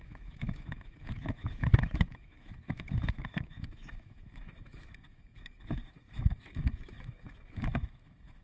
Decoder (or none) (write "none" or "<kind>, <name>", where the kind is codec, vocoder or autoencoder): autoencoder, DAC-VAE